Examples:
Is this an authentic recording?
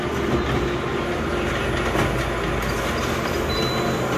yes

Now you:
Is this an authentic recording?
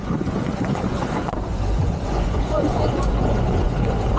no